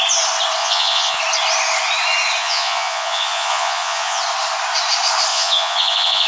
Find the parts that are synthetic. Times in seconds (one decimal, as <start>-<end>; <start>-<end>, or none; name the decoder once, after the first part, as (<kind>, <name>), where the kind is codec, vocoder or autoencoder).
0.6-1.2 (vocoder, Vocos); 2.4-4.2; 5.3-6.3